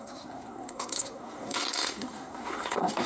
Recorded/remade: remade